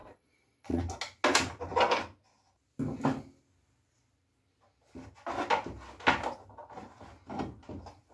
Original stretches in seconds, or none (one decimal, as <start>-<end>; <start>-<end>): 0.8-8.1